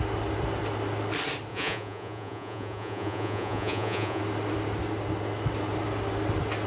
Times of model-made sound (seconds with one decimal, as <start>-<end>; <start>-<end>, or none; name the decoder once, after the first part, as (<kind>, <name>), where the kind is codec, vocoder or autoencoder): 1.5-4.2 (vocoder, Vocos)